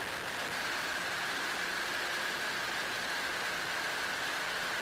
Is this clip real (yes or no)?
yes